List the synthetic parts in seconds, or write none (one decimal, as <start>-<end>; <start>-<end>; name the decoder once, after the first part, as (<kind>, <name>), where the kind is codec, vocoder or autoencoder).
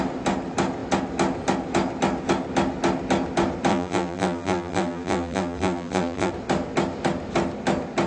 3.7-6.3 (vocoder, BigVGAN v2)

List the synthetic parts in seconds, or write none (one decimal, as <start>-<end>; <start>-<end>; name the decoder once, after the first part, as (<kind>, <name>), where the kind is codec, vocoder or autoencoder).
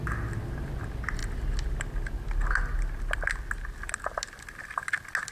none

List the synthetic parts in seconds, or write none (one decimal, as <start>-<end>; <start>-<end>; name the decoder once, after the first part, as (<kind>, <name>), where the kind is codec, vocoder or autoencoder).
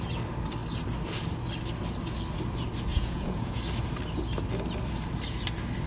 2.9-3.6 (vocoder, Vocos)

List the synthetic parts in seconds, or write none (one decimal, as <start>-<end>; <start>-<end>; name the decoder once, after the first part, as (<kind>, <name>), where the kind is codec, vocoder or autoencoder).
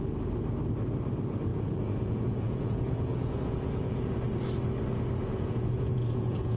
1.5-4.1 (vocoder, Vocos); 5.2-6.6